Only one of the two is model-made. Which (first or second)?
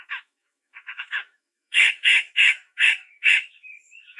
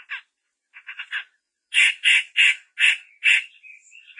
first